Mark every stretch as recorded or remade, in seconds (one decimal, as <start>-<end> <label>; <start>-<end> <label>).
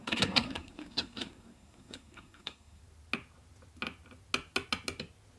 0.0-2.8 remade; 2.8-5.4 recorded